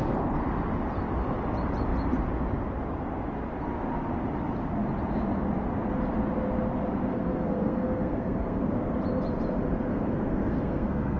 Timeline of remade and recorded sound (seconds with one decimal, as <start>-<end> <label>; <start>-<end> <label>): 0.0-7.1 recorded; 7.1-8.7 remade; 8.7-9.9 recorded; 9.9-11.2 remade

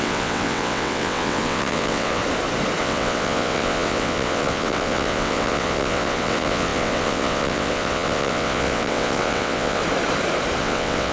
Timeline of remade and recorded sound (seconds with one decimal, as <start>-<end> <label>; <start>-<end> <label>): 0.0-2.2 remade; 2.2-2.8 recorded; 2.8-9.8 remade; 9.8-10.6 recorded; 10.6-11.1 remade

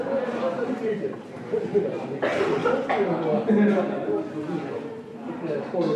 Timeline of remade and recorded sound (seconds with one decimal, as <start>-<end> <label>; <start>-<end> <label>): 0.0-2.6 remade; 2.6-5.6 recorded; 5.6-6.0 remade